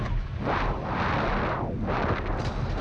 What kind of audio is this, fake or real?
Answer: real